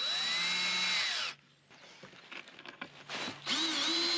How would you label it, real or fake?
real